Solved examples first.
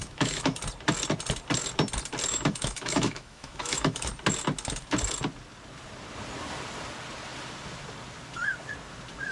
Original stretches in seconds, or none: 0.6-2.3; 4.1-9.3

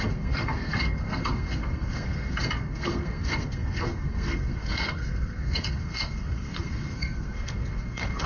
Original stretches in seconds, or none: none

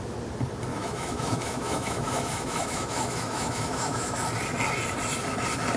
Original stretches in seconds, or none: 0.0-0.7; 4.2-5.8

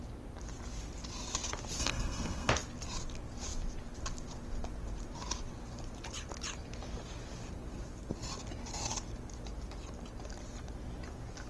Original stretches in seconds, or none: 0.0-1.8; 2.5-11.5

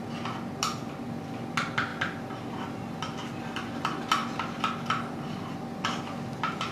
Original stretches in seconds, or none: 0.0-6.7